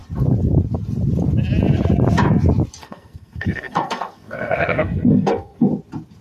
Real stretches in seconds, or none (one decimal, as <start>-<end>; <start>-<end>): 0.0-2.8; 5.7-6.2